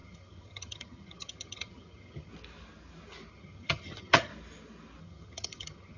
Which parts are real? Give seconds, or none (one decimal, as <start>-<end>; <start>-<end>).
2.3-3.3; 4.3-5.0